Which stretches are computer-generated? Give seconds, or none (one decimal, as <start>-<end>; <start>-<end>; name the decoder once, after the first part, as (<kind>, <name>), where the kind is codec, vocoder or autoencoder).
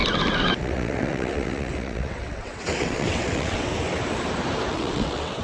0.6-3.7 (vocoder, WaveNeXt); 4.7-5.4